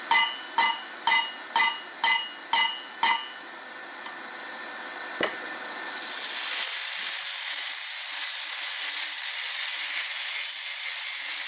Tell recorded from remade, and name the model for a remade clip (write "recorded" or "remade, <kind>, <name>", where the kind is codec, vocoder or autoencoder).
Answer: recorded